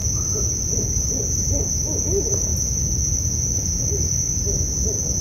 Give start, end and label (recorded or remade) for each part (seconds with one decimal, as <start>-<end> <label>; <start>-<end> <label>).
0.0-5.2 recorded